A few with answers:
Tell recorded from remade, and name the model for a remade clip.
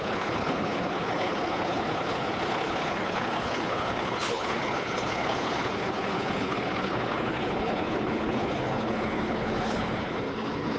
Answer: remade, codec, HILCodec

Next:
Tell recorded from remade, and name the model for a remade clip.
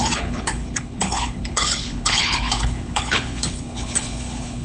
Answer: remade, codec, HILCodec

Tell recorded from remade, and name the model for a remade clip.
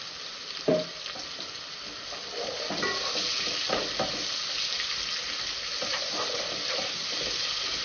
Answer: recorded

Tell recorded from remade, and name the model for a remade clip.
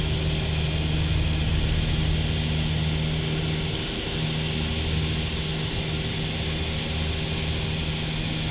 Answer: recorded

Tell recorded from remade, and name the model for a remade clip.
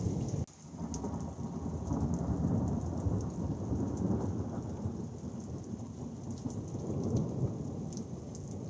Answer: recorded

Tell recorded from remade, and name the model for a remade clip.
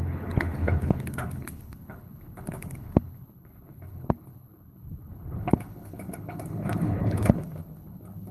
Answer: remade, codec, HILCodec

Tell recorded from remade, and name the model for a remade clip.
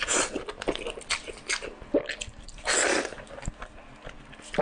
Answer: recorded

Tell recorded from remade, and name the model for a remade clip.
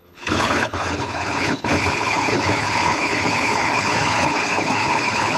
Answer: remade, codec, HILCodec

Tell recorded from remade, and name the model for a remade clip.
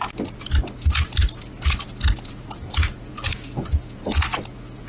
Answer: recorded